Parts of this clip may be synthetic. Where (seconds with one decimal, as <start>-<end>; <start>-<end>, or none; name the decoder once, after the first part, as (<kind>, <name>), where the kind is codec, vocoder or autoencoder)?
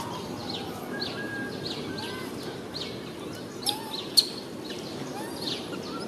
none